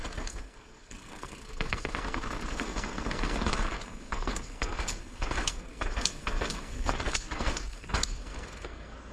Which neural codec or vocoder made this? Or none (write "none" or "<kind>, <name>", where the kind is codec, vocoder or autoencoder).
codec, SNAC